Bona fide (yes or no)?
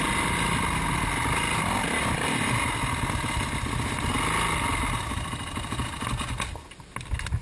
yes